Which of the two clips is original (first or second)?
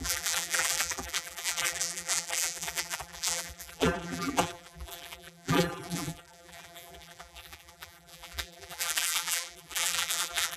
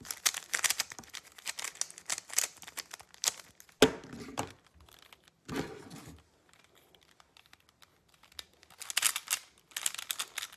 second